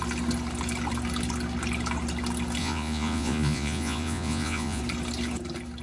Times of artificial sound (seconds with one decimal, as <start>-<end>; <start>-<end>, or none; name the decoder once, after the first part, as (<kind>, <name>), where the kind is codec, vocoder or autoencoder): 2.6-4.8 (vocoder, Vocos)